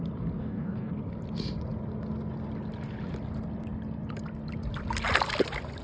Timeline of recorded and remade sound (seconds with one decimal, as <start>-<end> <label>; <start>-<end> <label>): 0.0-0.4 recorded; 0.4-0.9 remade; 0.9-5.8 recorded